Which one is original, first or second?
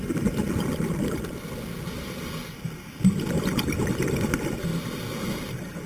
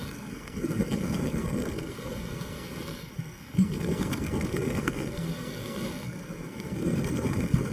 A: first